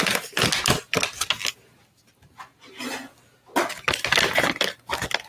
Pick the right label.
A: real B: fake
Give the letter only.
A